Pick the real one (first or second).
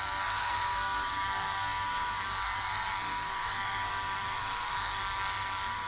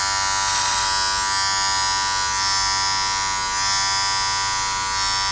second